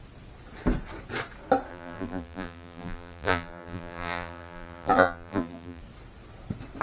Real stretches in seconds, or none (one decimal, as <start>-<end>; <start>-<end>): 0.0-1.7; 5.8-6.8

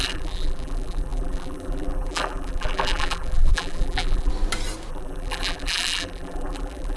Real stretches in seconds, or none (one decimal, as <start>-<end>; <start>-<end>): 4.3-4.9

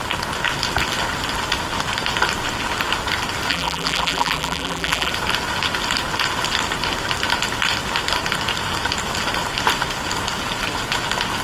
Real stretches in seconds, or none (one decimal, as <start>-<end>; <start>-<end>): 0.0-3.5; 5.1-11.4

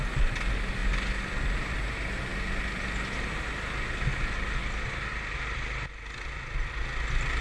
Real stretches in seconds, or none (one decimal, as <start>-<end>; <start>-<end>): 0.0-7.4

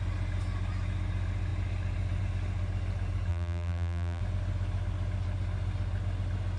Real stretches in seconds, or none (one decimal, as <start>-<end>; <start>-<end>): 0.0-3.3; 4.2-6.6